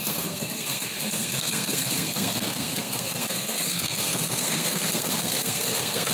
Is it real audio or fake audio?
fake